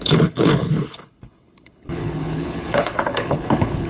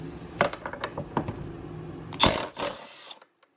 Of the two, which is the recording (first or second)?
second